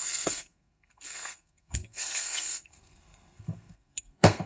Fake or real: fake